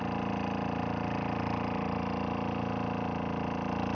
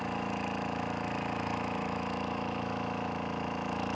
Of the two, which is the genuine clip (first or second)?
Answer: first